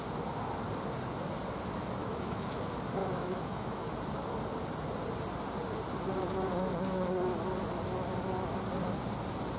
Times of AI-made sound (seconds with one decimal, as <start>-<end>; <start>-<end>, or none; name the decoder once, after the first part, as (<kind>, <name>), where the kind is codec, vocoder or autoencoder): 2.0-2.6 (autoencoder, DAC-VAE); 3.0-3.9